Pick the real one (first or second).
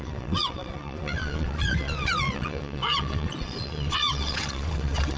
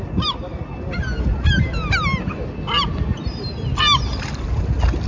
second